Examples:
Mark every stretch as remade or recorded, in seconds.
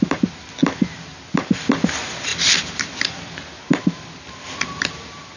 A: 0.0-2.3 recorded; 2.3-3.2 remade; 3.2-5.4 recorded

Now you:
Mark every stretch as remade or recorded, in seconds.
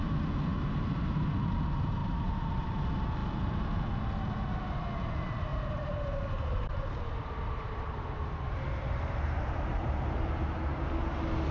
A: 0.0-2.0 recorded; 2.0-2.6 remade; 2.6-5.5 recorded; 5.5-10.6 remade; 10.6-11.5 recorded